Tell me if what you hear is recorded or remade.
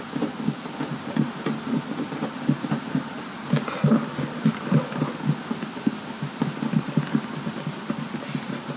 recorded